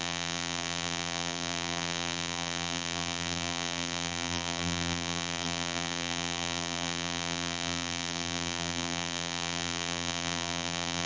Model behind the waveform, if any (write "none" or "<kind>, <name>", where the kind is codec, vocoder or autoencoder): vocoder, BigVGAN v2